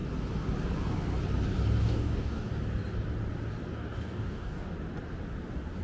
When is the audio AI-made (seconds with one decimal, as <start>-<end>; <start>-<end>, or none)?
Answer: 1.8-2.5; 3.8-4.7

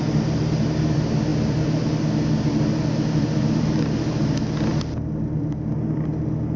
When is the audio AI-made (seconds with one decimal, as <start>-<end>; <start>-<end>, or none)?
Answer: none

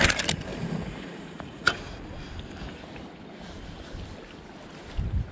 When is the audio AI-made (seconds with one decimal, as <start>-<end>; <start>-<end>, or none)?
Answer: 0.5-2.0

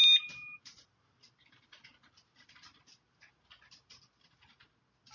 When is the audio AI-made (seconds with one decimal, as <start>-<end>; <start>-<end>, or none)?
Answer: none

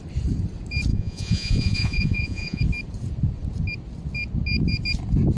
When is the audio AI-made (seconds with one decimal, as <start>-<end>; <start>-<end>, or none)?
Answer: 0.9-2.6

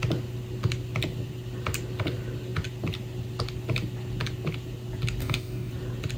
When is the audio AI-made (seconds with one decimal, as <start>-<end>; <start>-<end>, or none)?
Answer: 5.2-5.7

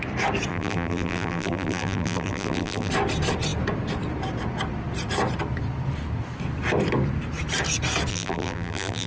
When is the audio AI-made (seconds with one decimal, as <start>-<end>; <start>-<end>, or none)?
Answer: 0.5-2.9; 8.1-9.1

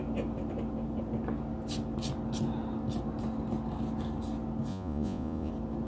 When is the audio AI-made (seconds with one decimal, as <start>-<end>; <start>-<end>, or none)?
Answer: 4.7-5.5